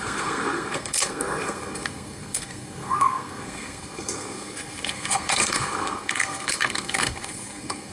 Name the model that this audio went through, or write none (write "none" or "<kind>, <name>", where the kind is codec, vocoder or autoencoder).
codec, SNAC